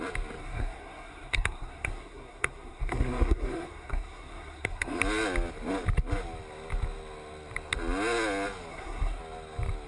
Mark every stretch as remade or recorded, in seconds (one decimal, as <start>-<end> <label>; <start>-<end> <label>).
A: 0.0-0.4 recorded; 0.4-5.0 remade; 5.0-8.7 recorded; 8.7-9.2 remade; 9.2-9.9 recorded

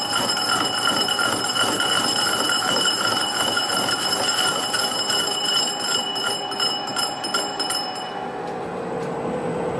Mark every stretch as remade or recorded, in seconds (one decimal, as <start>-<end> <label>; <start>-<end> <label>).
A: 0.0-9.8 recorded

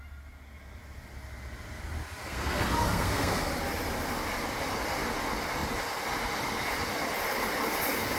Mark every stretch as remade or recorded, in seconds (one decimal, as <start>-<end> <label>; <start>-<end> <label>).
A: 0.0-2.2 recorded; 2.2-3.5 remade; 3.5-8.2 recorded

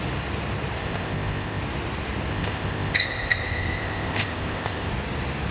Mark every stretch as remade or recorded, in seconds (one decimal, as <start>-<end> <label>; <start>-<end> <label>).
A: 0.0-0.8 recorded; 0.8-1.6 remade; 1.6-2.3 recorded; 2.3-4.9 remade; 4.9-5.5 recorded

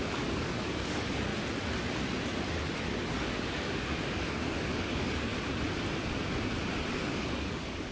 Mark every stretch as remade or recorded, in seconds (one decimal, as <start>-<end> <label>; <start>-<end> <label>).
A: 0.0-1.3 remade; 1.3-3.1 recorded; 3.1-5.3 remade; 5.3-6.9 recorded; 6.9-7.9 remade

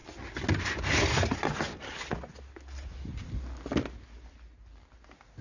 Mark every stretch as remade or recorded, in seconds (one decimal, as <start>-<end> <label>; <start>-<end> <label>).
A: 0.0-5.4 recorded